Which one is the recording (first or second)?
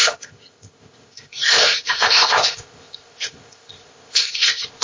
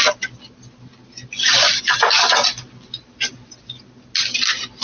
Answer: second